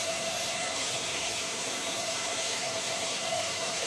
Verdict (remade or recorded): remade